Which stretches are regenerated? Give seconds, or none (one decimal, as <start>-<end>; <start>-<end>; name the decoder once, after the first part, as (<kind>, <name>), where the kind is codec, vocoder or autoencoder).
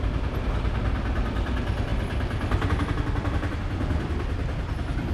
none